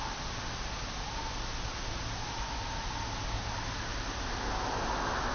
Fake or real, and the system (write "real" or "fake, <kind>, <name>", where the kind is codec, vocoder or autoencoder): real